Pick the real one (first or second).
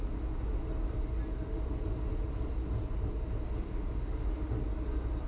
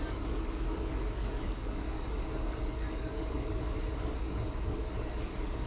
first